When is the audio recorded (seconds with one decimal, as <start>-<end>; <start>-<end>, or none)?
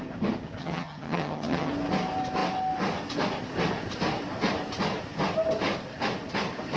0.0-0.6; 1.7-6.8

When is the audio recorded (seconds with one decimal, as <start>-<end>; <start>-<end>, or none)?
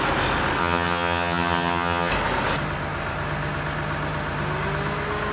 0.0-0.6; 2.1-5.3